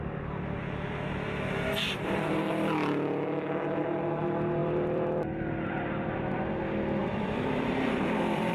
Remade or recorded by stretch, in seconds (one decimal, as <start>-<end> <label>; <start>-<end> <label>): 0.0-1.7 recorded; 1.7-2.5 remade; 2.5-4.6 recorded; 4.6-6.6 remade; 6.6-7.0 recorded; 7.0-8.5 remade

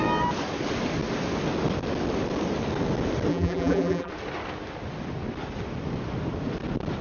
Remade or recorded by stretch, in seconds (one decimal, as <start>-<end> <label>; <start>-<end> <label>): 0.0-3.3 recorded; 3.3-4.1 remade; 4.1-7.0 recorded